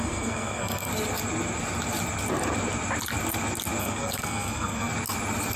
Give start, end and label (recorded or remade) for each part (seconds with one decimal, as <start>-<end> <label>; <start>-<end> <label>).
0.0-0.9 remade; 0.9-3.8 recorded; 3.8-4.9 remade; 4.9-5.6 recorded